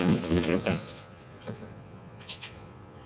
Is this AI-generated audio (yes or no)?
yes